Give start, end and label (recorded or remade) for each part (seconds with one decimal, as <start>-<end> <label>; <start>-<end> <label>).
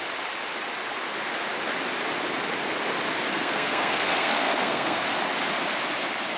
0.0-3.3 recorded; 3.3-5.0 remade; 5.0-6.4 recorded